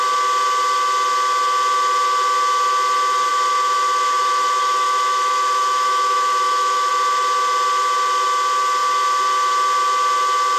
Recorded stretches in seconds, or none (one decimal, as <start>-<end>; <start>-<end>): 0.0-3.3; 6.9-10.6